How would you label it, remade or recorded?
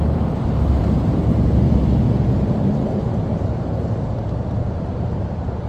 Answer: remade